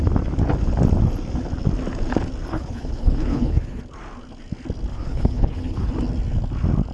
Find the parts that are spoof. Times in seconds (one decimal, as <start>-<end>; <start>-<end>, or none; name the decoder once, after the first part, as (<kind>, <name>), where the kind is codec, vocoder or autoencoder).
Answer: 2.5-3.8 (codec, HILCodec); 4.9-5.9